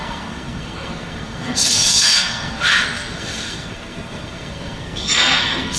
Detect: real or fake fake